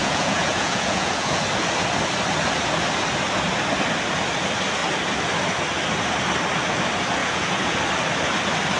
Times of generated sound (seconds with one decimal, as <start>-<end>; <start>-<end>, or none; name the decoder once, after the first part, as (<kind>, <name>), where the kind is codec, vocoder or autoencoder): 0.0-1.4 (vocoder, Vocos); 7.2-7.8

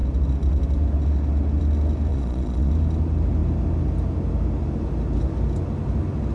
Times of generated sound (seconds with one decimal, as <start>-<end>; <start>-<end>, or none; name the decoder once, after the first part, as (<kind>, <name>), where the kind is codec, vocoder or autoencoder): 2.1-2.7 (vocoder, Vocos)